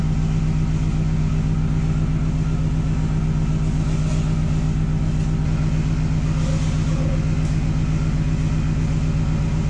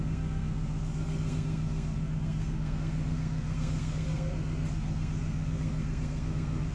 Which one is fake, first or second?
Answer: second